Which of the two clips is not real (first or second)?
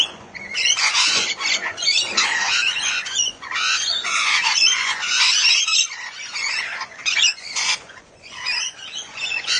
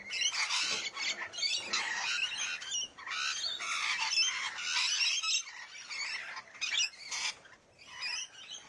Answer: first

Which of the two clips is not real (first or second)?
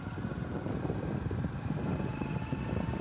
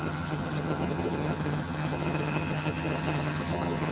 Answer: second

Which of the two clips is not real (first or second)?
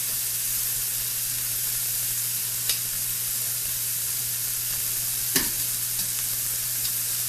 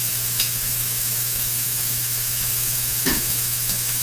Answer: second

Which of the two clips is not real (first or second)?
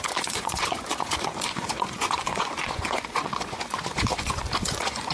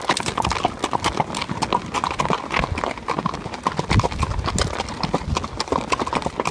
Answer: first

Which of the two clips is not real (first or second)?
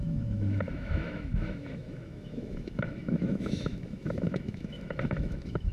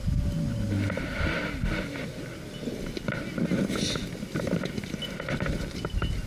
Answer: first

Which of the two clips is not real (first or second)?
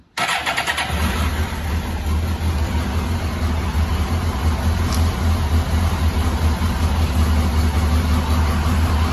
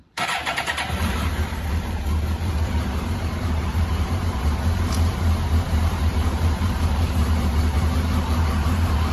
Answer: second